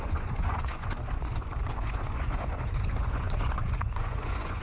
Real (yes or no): no